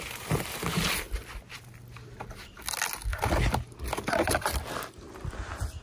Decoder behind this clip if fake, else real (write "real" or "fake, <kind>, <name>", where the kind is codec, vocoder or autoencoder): real